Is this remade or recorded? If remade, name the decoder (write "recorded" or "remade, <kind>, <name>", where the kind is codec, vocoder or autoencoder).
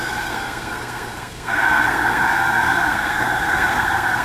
remade, codec, SNAC